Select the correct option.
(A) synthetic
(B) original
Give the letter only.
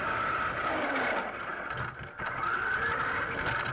B